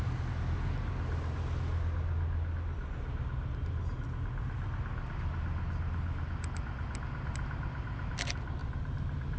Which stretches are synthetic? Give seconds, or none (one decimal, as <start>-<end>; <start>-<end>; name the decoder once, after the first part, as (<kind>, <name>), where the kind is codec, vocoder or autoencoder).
8.6-9.4 (vocoder, BigVGAN v2)